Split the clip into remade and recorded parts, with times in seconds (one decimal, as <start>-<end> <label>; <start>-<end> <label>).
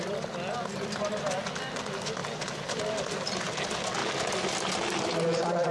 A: 0.0-2.2 recorded; 2.2-2.8 remade; 2.8-5.7 recorded